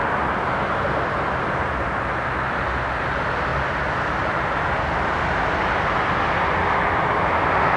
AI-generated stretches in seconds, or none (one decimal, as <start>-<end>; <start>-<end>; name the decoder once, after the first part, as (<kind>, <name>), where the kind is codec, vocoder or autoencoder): none